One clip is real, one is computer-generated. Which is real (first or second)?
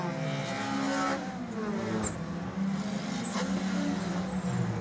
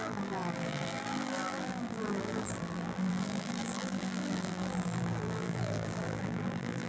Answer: first